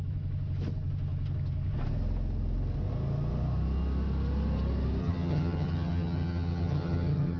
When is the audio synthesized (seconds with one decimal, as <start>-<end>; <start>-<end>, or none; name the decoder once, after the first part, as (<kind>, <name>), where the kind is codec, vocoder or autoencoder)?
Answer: 5.0-7.4 (vocoder, HiFi-GAN)